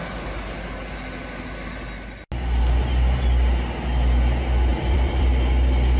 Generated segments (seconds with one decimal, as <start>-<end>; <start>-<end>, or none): 4.7-5.3